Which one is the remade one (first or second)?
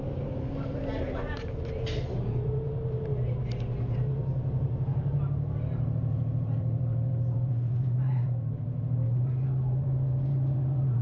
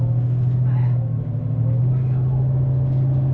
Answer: first